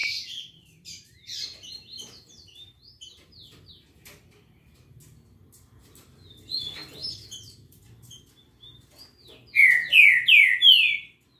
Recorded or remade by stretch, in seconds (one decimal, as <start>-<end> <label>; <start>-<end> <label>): 0.0-3.7 remade; 3.7-7.0 recorded; 7.0-8.2 remade; 8.2-11.4 recorded